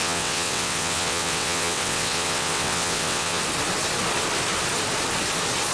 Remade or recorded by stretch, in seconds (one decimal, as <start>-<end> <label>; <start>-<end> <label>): 0.0-3.4 remade; 3.4-5.7 recorded